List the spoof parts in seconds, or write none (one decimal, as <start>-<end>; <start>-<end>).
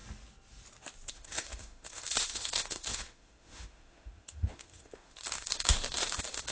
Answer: 1.1-6.5